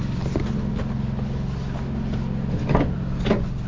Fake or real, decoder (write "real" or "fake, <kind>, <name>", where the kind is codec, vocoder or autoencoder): real